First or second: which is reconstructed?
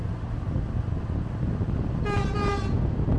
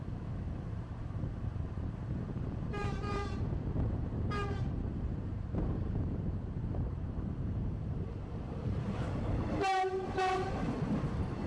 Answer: second